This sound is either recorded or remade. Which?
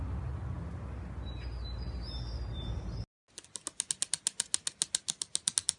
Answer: recorded